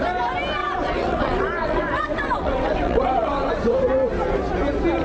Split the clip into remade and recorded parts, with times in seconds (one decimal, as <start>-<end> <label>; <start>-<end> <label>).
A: 0.0-0.6 recorded; 0.6-3.5 remade; 3.5-5.0 recorded